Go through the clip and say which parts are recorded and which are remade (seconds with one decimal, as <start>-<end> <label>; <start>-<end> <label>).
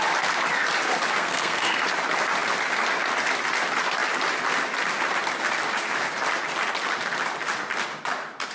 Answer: 0.0-1.2 recorded; 1.2-1.8 remade; 1.8-8.5 recorded